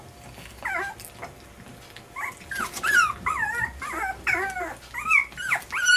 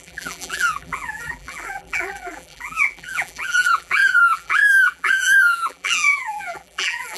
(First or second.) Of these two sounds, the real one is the first